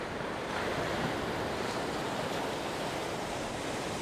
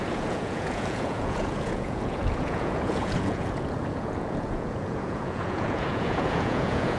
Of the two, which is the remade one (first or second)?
second